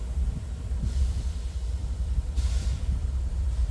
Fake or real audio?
real